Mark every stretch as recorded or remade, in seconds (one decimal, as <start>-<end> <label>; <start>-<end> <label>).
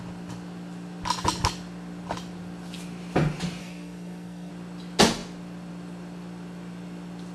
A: 0.0-3.6 recorded; 3.6-4.5 remade; 4.5-7.3 recorded